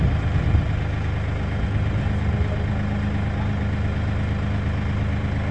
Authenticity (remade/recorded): recorded